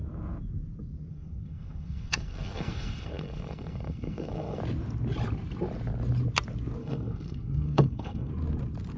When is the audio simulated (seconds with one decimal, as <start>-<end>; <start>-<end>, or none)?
1.1-4.6; 6.8-8.3